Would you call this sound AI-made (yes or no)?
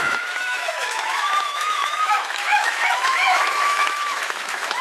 yes